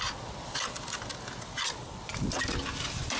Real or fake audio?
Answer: real